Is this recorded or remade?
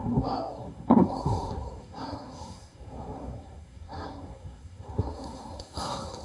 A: remade